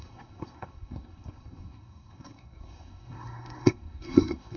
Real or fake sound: fake